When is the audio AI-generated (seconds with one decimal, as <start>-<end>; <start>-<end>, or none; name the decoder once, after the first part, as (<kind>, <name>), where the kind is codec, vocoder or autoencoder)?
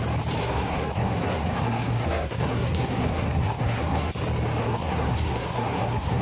0.4-4.1 (codec, SNAC); 4.6-6.2